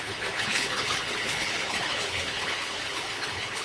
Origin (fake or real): fake